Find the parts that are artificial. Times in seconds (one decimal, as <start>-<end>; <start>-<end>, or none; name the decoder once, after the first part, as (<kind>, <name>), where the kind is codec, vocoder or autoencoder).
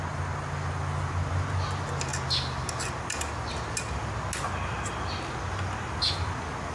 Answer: none